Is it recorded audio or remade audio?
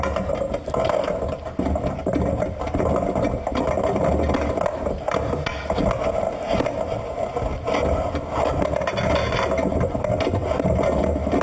recorded